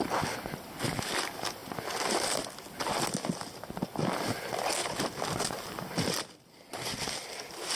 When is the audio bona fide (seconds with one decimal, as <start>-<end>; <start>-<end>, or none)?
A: 0.0-4.8; 6.3-7.7